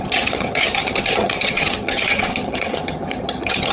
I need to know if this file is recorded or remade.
remade